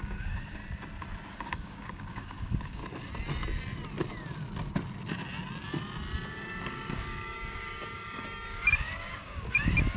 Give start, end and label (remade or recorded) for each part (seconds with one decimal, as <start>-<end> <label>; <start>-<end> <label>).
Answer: 0.0-0.6 remade; 0.6-1.3 recorded; 1.3-2.8 remade; 2.8-6.3 recorded; 6.3-10.0 remade